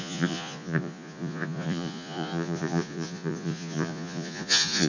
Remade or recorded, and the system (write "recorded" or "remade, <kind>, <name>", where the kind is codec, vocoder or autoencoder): remade, vocoder, Vocos